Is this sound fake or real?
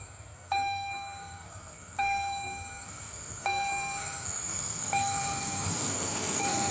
fake